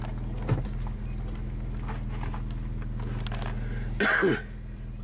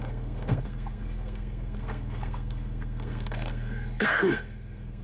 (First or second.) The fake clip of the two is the second